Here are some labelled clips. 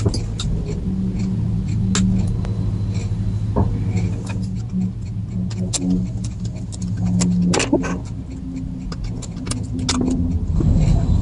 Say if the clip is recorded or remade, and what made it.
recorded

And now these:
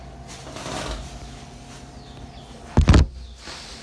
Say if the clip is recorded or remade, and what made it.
recorded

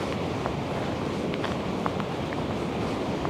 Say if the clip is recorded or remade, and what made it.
recorded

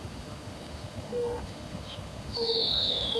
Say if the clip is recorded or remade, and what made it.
remade, autoencoder, DAC-VAE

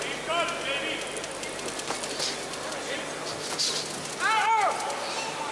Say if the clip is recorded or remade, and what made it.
recorded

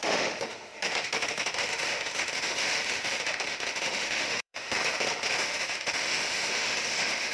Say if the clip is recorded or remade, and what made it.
remade, autoencoder, DAC-VAE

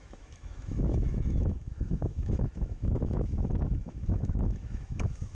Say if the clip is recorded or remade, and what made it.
remade, autoencoder, DAC-VAE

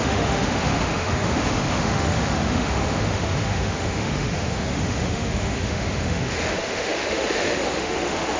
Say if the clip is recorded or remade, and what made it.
remade, autoencoder, DAC-VAE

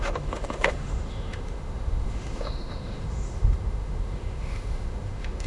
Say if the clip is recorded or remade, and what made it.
remade, autoencoder, DAC-VAE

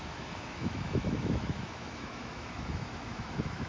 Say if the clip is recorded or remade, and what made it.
remade, autoencoder, DAC-VAE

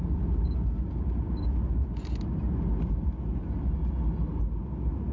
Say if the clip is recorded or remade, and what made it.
recorded